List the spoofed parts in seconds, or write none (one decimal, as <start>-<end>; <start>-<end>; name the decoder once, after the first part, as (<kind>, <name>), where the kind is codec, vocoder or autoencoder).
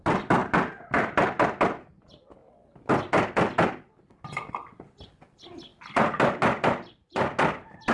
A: none